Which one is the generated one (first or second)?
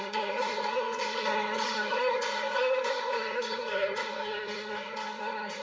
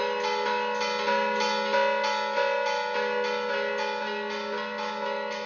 first